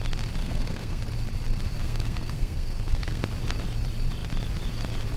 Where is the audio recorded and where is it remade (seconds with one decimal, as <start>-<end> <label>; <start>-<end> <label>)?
0.0-0.4 recorded; 0.4-1.0 remade; 1.0-1.8 recorded; 1.8-3.2 remade; 3.2-5.2 recorded